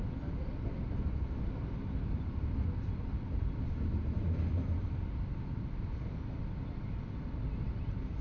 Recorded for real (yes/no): yes